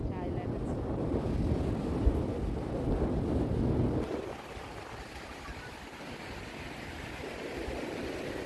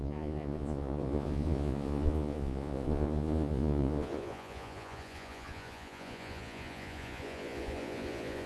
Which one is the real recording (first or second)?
first